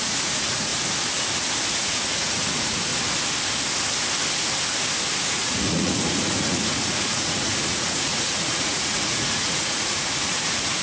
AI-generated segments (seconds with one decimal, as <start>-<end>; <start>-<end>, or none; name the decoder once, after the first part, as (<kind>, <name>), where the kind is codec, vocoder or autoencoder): 0.0-0.7 (vocoder, Vocos); 1.7-2.9; 5.1-10.8